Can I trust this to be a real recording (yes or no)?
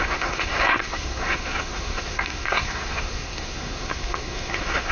no